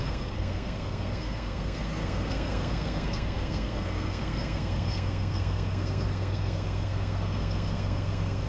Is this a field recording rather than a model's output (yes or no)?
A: no